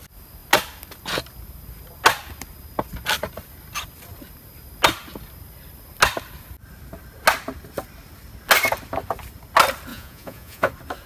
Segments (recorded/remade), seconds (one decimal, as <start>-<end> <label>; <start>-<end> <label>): 0.0-9.9 recorded; 9.9-10.7 remade; 10.7-11.1 recorded